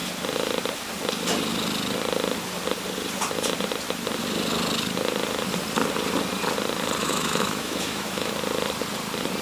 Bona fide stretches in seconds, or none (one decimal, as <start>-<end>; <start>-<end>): 0.0-7.0; 8.3-9.4